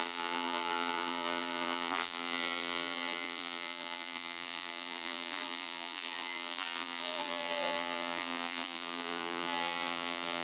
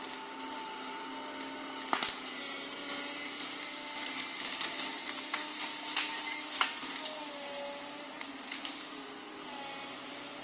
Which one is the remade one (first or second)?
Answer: first